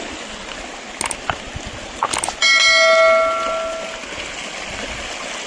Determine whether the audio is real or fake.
real